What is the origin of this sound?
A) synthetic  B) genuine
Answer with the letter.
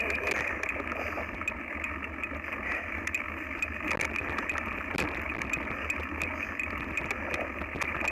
B